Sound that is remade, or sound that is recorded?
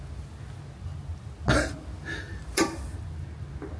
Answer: recorded